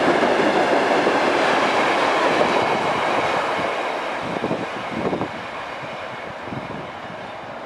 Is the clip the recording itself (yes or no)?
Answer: yes